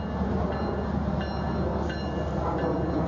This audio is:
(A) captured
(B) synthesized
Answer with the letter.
A